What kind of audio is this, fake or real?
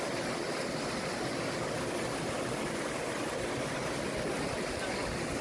real